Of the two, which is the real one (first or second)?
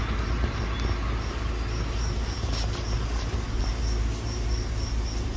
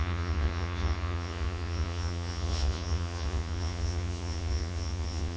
first